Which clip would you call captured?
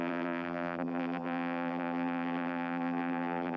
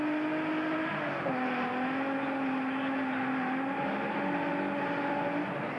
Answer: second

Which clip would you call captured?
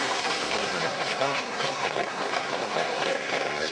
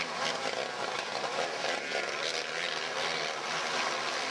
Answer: second